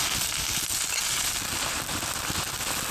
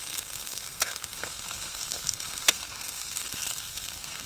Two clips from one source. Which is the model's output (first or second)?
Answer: second